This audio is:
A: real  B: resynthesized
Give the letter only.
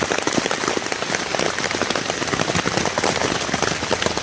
A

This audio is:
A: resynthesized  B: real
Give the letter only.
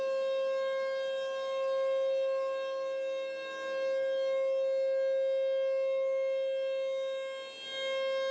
B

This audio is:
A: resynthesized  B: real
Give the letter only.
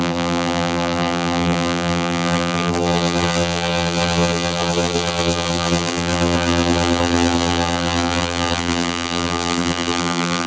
A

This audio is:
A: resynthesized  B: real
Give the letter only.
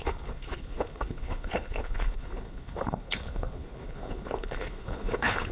A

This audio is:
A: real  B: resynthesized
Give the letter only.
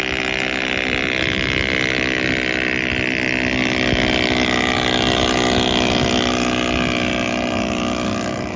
A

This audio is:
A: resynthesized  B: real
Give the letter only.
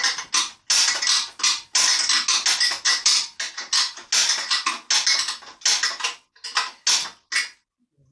B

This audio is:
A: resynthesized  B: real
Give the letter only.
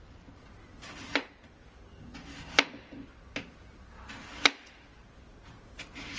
B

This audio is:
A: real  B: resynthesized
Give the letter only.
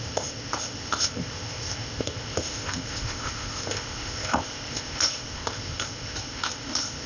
B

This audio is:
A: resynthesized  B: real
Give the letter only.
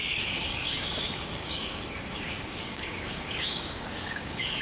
A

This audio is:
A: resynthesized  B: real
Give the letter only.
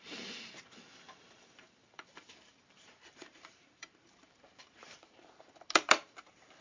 A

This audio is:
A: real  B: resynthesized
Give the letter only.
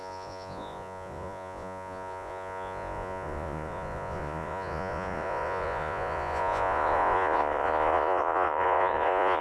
B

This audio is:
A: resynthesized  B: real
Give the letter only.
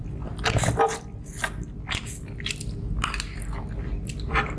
B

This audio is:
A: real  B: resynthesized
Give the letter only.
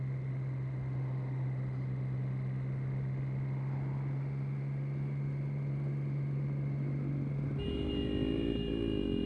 A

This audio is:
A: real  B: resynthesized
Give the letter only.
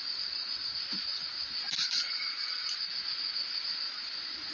A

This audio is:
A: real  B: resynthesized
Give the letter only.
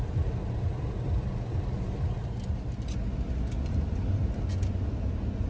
A